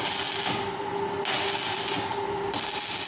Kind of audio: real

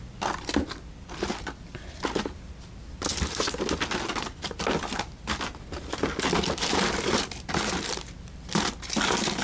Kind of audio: real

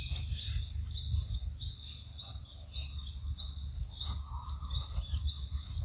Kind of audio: real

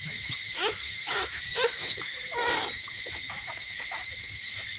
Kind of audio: fake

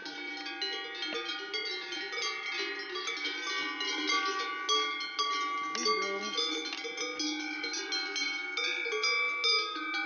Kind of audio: real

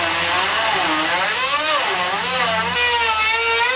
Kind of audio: real